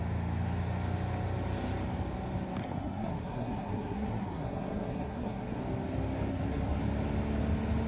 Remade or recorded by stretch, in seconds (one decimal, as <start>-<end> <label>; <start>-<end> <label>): 0.0-2.6 recorded; 2.6-5.6 remade; 5.6-6.3 recorded; 6.3-6.8 remade; 6.8-7.9 recorded